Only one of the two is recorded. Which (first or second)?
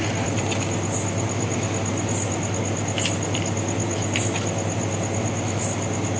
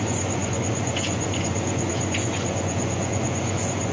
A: first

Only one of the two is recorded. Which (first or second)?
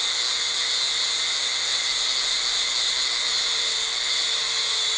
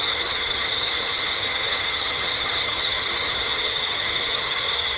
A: first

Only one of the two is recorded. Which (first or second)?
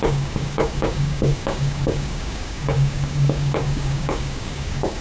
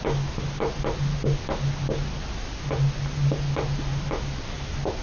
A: second